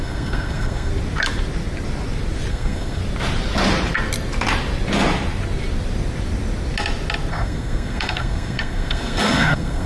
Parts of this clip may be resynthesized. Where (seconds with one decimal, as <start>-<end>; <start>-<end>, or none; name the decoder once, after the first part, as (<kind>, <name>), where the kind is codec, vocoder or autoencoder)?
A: 0.0-0.9 (codec, SNAC); 2.5-3.0; 7.3-9.9